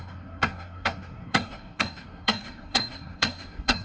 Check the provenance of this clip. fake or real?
fake